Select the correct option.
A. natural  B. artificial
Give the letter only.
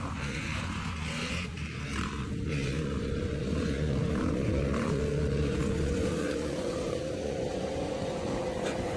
B